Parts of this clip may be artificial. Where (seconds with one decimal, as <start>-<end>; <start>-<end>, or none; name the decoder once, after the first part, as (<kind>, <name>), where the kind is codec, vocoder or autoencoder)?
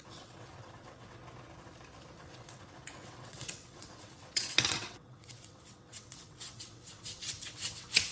0.0-1.2 (vocoder, WaveNeXt); 2.2-8.1